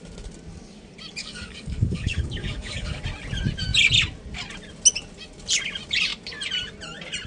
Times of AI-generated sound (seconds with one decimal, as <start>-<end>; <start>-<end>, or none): 1.2-3.0